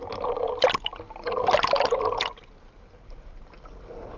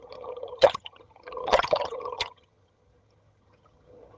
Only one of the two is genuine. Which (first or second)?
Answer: first